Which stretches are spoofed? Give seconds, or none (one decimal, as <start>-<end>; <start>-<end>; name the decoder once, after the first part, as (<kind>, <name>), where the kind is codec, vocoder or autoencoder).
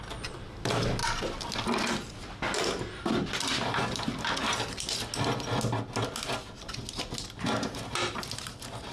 none